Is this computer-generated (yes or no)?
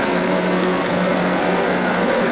yes